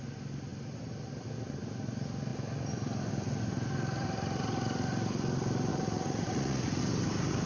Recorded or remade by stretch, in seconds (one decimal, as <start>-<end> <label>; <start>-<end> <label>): 0.0-5.7 recorded; 5.7-6.8 remade; 6.8-7.5 recorded